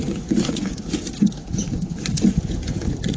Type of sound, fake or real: fake